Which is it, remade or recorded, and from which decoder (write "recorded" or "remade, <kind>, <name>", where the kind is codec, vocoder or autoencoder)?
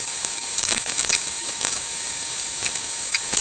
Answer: remade, codec, DAC